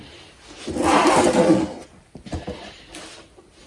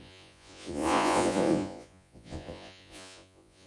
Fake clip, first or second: second